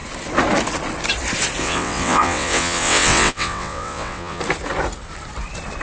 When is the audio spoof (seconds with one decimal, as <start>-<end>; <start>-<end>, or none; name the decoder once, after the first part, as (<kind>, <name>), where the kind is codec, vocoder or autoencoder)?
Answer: 1.6-4.4 (vocoder, WaveNeXt)